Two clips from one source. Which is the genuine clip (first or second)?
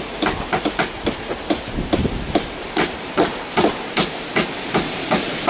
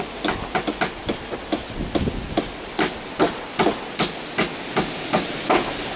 second